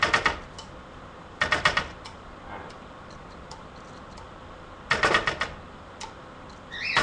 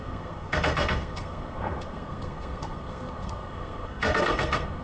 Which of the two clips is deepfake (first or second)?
second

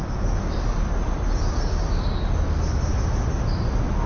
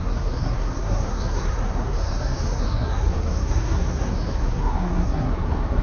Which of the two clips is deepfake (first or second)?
second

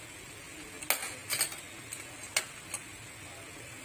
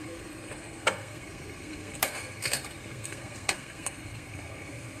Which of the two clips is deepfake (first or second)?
second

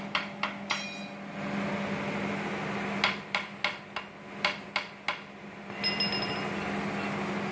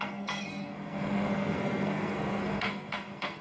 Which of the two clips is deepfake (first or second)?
second